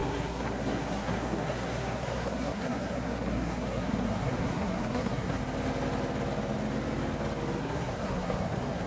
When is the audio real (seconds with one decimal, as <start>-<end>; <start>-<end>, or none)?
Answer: 5.4-7.6